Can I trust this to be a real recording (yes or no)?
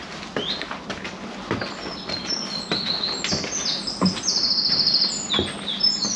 yes